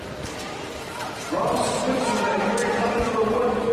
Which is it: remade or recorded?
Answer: remade